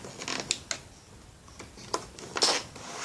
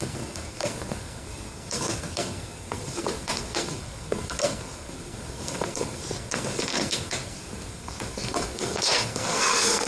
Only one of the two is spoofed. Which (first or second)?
second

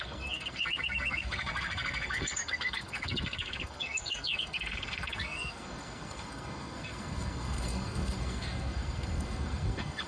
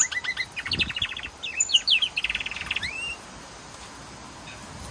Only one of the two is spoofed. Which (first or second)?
first